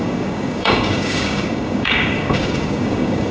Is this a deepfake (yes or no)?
yes